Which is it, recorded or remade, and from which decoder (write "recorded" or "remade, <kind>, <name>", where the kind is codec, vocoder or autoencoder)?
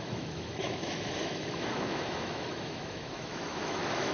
remade, autoencoder, DAC-VAE